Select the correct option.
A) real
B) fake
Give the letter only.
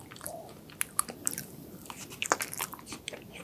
A